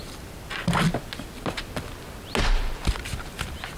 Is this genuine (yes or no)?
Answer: yes